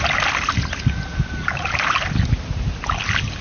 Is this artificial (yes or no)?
no